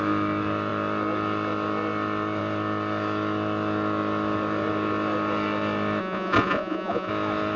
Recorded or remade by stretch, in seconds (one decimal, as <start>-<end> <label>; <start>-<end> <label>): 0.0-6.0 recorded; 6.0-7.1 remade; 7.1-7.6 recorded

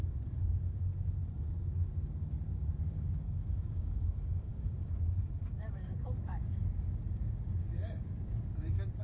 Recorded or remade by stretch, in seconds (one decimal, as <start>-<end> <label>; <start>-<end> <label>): 0.0-0.9 remade; 0.9-2.8 recorded; 2.8-9.0 remade

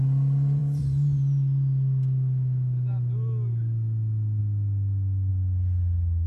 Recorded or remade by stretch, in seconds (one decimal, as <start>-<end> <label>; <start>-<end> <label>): 0.0-6.3 recorded